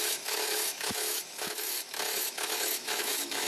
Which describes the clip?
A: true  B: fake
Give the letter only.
B